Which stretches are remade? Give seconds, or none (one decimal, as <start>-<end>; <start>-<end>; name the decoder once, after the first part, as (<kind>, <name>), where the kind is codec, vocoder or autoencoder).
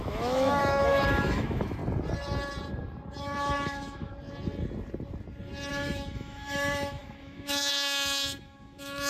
0.0-1.8 (autoencoder, DAC-VAE); 3.2-4.1; 5.7-9.1